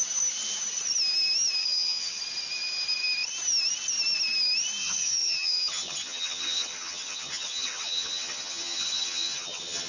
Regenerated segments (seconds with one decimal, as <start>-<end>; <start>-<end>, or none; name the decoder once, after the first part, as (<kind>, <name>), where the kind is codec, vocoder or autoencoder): 1.6-2.2 (vocoder, HiFi-GAN); 4.8-9.9